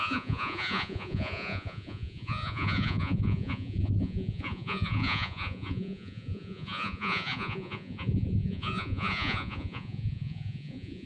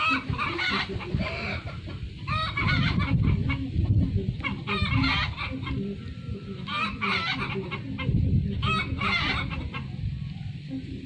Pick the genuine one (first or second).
second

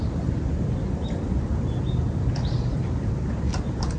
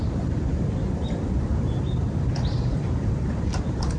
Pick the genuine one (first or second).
first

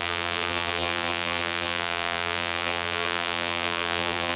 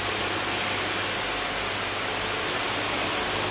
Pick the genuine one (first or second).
second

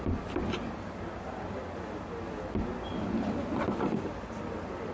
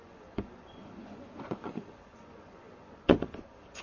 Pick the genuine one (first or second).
first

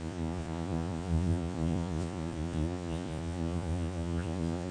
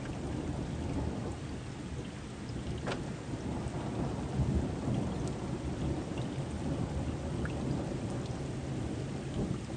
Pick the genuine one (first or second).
second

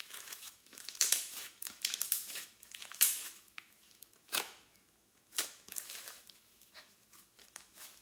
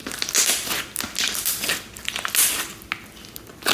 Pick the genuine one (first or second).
second